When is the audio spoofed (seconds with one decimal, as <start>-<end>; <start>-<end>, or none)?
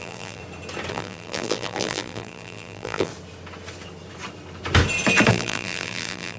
0.0-0.4; 0.9-3.1; 5.3-6.4